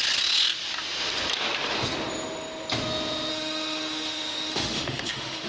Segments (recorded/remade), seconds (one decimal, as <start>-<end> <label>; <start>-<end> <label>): 0.0-3.3 recorded; 3.3-5.5 remade